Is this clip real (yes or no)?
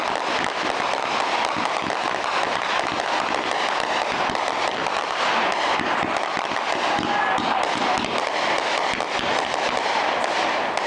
yes